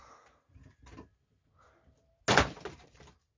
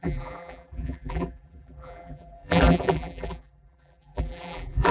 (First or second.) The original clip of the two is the first